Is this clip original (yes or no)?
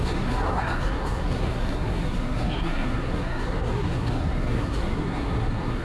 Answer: no